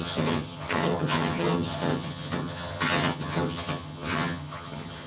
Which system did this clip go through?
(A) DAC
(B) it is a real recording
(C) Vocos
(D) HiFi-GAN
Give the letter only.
D